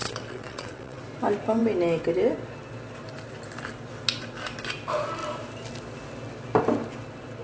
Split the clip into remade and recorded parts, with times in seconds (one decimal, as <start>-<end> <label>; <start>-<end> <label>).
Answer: 0.0-1.0 remade; 1.0-7.4 recorded